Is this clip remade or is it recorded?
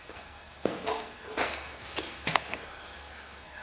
remade